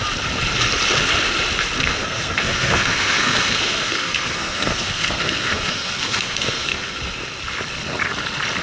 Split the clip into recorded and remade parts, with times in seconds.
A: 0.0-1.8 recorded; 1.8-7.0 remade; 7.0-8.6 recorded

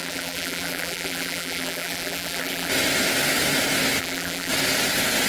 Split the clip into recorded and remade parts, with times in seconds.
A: 0.0-2.7 remade; 2.7-4.0 recorded; 4.0-4.5 remade; 4.5-5.3 recorded

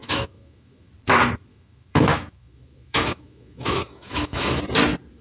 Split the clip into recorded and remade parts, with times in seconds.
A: 0.0-0.9 remade; 0.9-1.5 recorded; 1.5-4.6 remade; 4.6-5.2 recorded

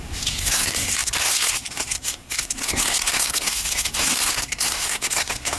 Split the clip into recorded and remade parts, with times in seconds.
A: 0.0-5.6 remade

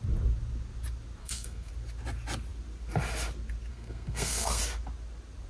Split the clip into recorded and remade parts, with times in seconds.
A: 0.0-1.2 recorded; 1.2-1.7 remade; 1.7-3.7 recorded; 3.7-4.6 remade; 4.6-5.5 recorded